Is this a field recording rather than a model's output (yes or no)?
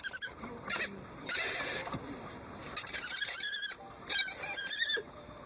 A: no